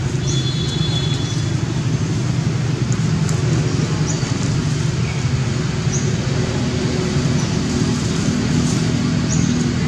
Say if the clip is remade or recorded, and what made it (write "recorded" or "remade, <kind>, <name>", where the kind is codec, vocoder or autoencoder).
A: recorded